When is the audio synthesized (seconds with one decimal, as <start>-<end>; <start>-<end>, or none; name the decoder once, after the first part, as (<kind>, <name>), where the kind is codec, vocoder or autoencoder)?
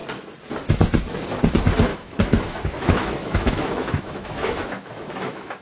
1.9-5.6 (autoencoder, DAC-VAE)